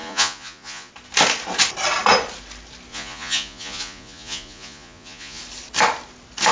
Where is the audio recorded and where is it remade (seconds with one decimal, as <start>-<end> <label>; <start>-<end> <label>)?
0.0-0.9 remade; 0.9-2.9 recorded; 2.9-5.4 remade; 5.4-6.5 recorded